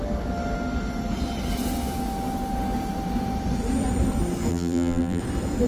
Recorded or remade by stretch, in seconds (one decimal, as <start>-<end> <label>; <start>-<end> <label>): 0.0-4.5 recorded; 4.5-5.2 remade; 5.2-5.7 recorded